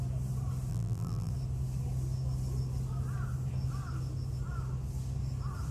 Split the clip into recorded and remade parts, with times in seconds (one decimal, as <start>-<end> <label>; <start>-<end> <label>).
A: 0.0-0.7 recorded; 0.7-1.3 remade; 1.3-5.7 recorded